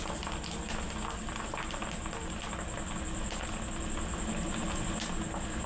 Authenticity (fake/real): real